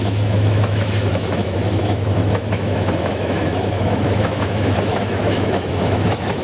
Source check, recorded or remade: remade